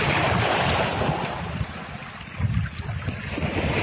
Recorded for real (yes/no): yes